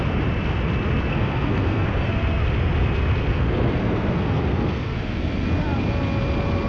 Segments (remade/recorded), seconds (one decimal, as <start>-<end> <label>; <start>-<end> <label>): 0.0-1.1 recorded; 1.1-2.1 remade; 2.1-3.3 recorded; 3.3-5.2 remade; 5.2-6.7 recorded